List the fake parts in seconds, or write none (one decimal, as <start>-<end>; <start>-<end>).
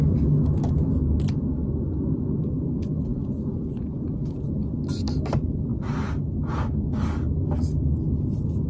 3.1-4.8